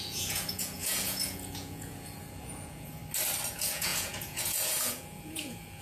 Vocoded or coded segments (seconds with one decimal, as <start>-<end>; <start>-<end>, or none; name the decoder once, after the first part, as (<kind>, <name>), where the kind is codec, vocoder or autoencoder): 0.0-3.0 (vocoder, Vocos); 3.5-5.8